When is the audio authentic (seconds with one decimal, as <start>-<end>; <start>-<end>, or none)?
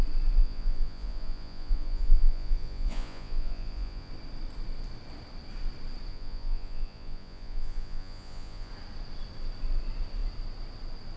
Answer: 0.0-0.4; 4.1-6.1; 8.7-11.2